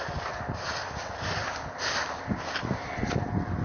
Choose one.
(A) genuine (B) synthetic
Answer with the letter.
A